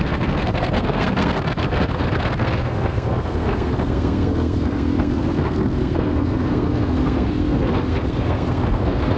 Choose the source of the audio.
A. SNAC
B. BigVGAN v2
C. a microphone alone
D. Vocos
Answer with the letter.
A